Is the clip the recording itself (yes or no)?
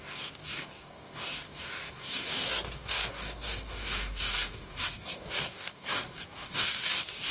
no